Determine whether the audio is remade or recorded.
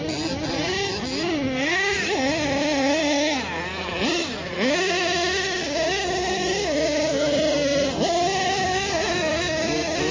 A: recorded